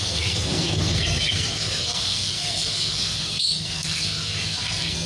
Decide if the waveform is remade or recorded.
remade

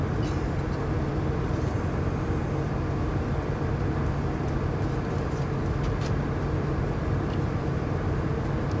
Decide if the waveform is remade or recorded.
recorded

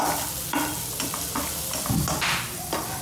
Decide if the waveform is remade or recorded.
recorded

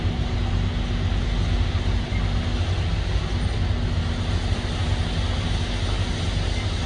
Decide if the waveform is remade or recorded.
recorded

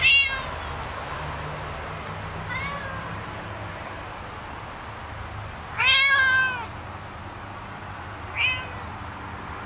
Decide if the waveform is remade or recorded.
recorded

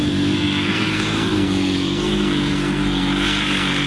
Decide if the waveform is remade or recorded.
remade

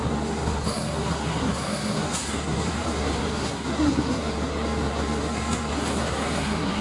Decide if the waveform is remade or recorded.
remade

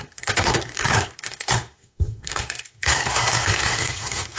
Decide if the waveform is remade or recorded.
remade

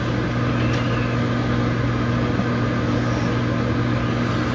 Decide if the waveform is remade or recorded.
recorded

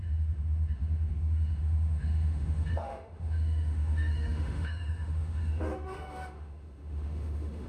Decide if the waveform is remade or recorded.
remade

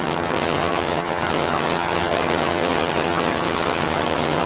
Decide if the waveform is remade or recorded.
remade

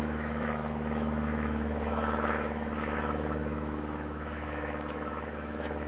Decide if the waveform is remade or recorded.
remade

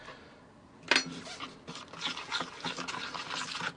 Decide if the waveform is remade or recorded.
recorded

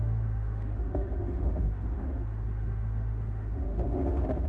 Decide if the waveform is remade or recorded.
remade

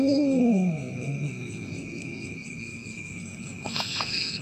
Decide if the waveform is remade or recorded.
remade